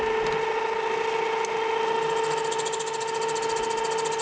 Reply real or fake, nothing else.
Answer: real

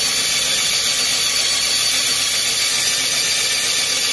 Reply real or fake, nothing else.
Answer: real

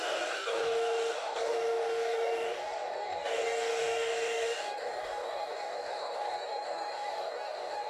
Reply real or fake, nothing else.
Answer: fake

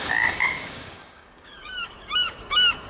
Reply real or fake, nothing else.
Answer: fake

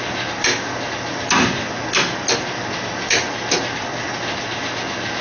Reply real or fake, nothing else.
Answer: real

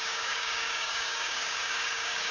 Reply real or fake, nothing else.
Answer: fake